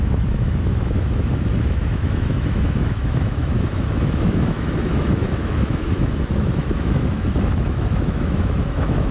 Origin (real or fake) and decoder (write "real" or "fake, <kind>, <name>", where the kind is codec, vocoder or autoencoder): fake, autoencoder, DAC-VAE